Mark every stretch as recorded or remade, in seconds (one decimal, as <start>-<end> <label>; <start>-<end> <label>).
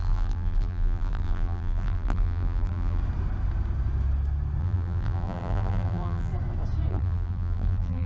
0.0-3.0 remade; 3.0-4.6 recorded; 4.6-6.3 remade; 6.3-6.9 recorded; 6.9-8.1 remade